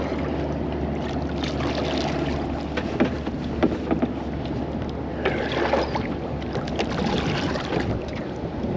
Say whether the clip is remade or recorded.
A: recorded